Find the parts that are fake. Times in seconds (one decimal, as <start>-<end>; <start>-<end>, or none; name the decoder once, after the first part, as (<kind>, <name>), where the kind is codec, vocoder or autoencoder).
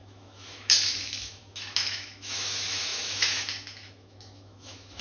0.0-5.0 (autoencoder, DAC-VAE)